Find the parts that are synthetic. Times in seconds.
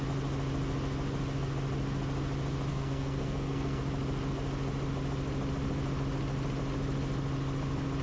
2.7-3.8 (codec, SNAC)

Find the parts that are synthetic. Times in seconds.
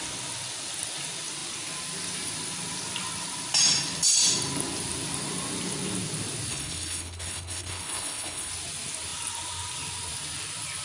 6.5-8.5 (codec, HILCodec)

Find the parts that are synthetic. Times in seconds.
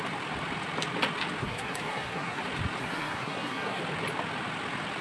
1.4-2.4 (codec, SNAC); 2.8-3.8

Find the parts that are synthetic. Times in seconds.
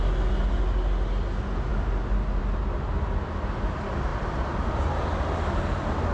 4.1-5.6 (vocoder, BigVGAN v2)